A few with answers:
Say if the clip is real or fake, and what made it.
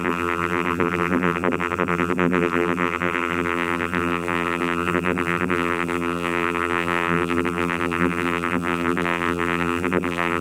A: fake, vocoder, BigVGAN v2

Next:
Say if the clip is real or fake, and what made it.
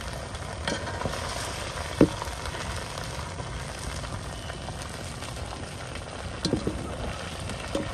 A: real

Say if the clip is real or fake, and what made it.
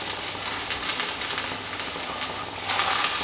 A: real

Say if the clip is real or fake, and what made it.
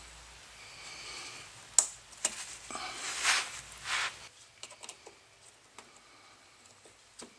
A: real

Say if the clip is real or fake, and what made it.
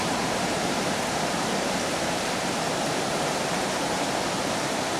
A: fake, vocoder, BigVGAN v2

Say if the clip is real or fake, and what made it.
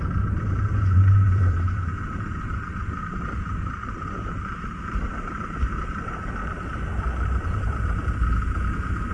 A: fake, vocoder, BigVGAN v2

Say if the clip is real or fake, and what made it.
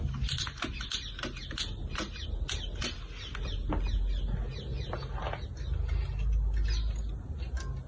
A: real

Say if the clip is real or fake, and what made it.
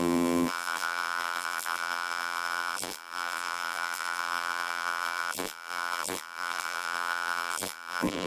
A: fake, vocoder, BigVGAN v2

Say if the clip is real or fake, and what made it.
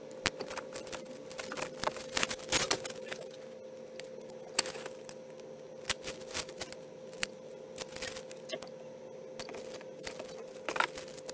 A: real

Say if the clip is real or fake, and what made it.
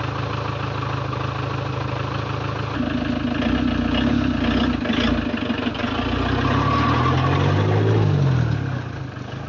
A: real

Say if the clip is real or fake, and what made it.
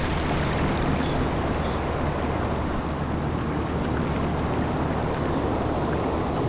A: real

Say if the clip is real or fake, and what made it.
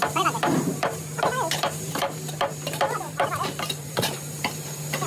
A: fake, vocoder, BigVGAN v2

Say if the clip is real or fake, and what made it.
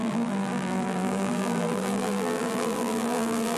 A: fake, vocoder, BigVGAN v2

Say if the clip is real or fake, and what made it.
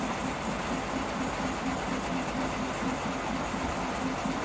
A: real